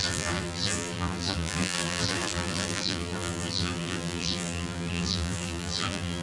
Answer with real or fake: fake